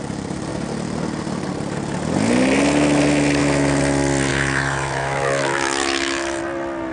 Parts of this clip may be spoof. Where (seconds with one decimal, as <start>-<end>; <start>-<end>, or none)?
4.3-6.4